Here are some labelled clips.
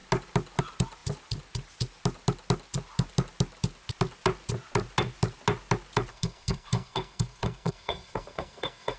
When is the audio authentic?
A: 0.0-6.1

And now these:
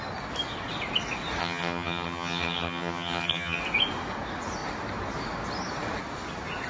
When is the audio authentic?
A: 0.0-1.4; 3.6-6.7

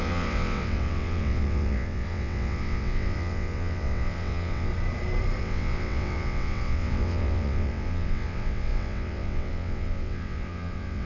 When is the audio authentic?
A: 4.7-5.4

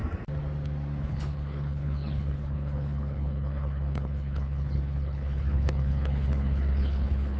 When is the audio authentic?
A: 0.0-1.0

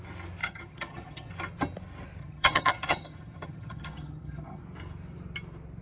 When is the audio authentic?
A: 0.0-0.4; 1.3-2.2; 4.6-5.8

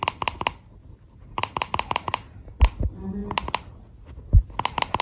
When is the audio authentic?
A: 0.0-5.0

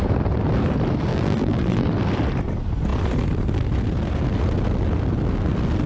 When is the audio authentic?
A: 0.0-1.1; 1.9-5.9

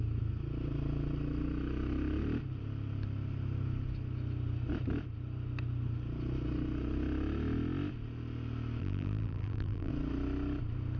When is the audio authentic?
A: 0.0-8.8; 9.9-11.0